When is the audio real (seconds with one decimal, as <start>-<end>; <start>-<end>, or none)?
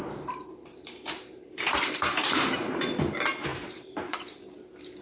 3.0-3.5; 4.4-5.0